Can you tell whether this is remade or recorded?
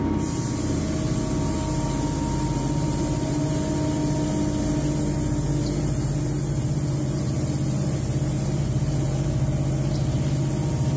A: recorded